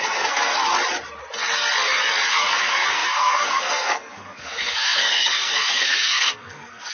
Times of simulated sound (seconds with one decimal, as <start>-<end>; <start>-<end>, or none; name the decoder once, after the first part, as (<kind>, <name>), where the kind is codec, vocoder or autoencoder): 0.0-0.5 (codec, SNAC); 2.3-6.9